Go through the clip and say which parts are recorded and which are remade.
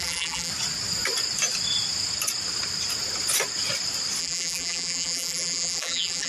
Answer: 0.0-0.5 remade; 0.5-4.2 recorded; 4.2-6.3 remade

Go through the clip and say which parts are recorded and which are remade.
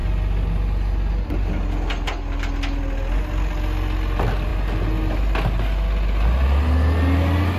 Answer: 0.0-7.6 recorded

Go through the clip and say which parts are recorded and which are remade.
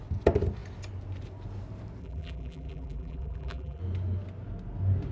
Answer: 0.0-2.0 recorded; 2.0-3.8 remade; 3.8-5.1 recorded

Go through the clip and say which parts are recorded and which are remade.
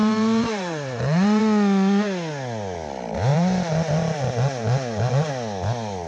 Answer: 0.0-1.4 remade; 1.4-3.3 recorded; 3.3-5.3 remade; 5.3-6.1 recorded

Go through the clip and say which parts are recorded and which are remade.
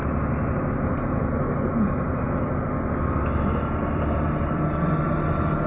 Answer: 0.0-5.7 recorded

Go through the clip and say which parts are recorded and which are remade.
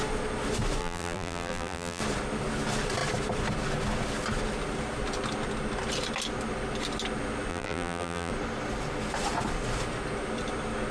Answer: 0.0-0.8 recorded; 0.8-2.0 remade; 2.0-7.5 recorded; 7.5-8.3 remade; 8.3-10.9 recorded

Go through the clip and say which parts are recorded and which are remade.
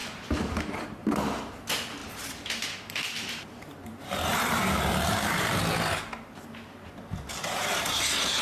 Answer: 0.0-0.6 remade; 0.6-1.0 recorded; 1.0-1.6 remade; 1.6-2.0 recorded; 2.0-5.6 remade; 5.6-8.4 recorded